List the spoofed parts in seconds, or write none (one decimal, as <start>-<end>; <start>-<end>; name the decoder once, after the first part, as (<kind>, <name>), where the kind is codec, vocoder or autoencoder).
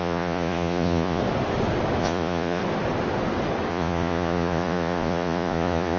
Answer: 0.0-1.2 (vocoder, Vocos); 2.0-2.6; 3.7-6.0